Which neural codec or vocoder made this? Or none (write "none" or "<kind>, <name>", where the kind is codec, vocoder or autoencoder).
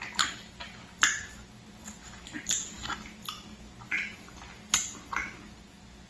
none